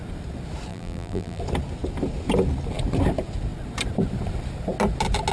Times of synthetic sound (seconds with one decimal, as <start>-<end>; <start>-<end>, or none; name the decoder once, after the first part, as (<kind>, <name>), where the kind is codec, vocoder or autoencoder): 0.7-1.4 (vocoder, BigVGAN v2)